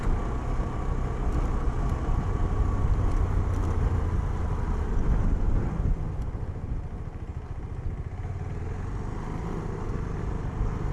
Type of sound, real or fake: real